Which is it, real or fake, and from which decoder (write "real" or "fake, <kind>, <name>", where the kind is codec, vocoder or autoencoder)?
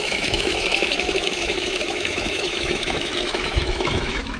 fake, autoencoder, DAC-VAE